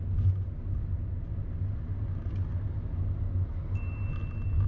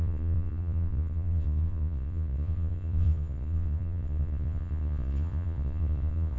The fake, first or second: second